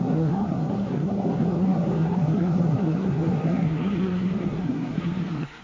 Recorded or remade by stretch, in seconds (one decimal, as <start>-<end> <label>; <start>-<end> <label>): 0.0-5.6 remade